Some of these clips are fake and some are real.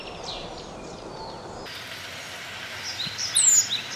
real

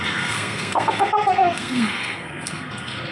fake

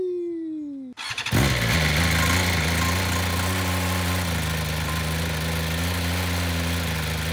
real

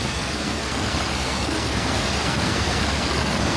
fake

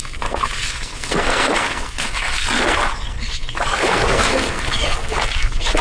fake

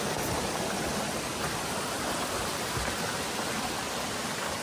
real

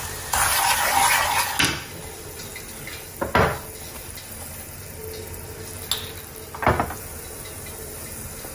real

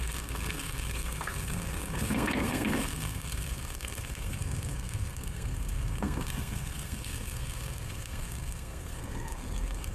fake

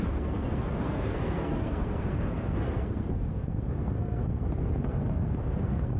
fake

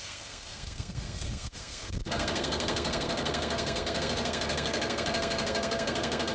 fake